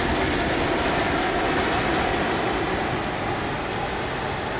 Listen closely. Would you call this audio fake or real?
real